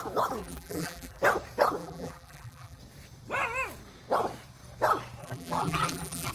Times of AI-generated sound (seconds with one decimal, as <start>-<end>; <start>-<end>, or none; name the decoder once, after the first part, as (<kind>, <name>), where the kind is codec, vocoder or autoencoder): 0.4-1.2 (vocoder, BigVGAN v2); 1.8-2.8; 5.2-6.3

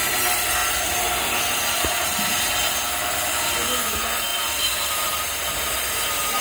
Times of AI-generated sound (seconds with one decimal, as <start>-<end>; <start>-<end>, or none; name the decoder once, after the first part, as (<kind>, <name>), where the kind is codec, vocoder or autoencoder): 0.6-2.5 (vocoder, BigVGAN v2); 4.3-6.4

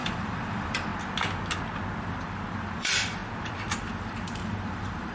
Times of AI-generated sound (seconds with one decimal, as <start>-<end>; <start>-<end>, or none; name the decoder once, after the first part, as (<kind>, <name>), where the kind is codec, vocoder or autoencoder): 0.0-0.9 (vocoder, BigVGAN v2); 2.0-3.2; 3.8-5.1

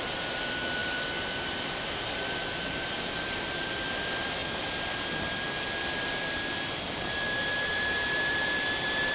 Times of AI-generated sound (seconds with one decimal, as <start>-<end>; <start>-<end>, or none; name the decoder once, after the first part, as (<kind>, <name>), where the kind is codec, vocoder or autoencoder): 0.0-9.1 (vocoder, BigVGAN v2)

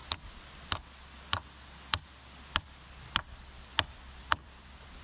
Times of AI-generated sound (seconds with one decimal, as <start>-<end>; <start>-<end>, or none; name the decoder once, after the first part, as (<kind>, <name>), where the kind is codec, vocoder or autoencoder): 3.0-3.7 (vocoder, BigVGAN v2); 4.2-5.0

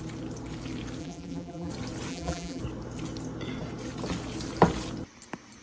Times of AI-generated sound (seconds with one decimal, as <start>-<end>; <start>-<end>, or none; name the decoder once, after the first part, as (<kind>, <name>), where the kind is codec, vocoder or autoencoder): 1.0-1.7 (vocoder, BigVGAN v2); 2.1-2.6